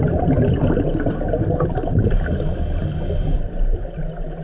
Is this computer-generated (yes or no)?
no